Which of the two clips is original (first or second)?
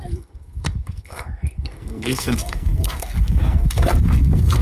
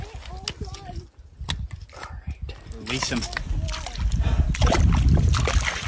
second